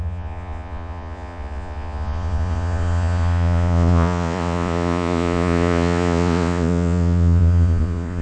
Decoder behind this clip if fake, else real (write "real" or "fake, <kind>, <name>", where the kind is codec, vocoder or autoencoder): fake, vocoder, Vocos